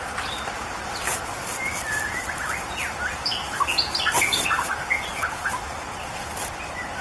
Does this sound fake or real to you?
real